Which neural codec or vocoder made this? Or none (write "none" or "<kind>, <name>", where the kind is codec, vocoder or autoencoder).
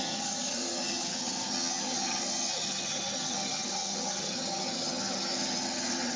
vocoder, HiFi-GAN